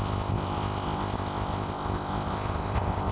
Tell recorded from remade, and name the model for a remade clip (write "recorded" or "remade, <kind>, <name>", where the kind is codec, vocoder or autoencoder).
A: remade, codec, ZipCodec